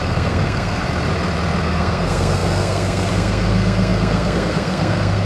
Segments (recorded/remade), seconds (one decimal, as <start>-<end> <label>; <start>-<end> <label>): 0.0-0.8 remade; 0.8-1.6 recorded; 1.6-5.3 remade